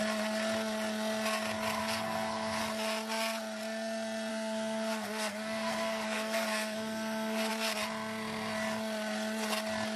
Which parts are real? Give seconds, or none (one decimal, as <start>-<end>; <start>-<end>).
0.0-1.8; 2.6-4.3; 7.5-10.0